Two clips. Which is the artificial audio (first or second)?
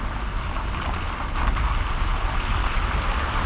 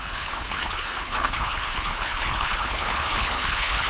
second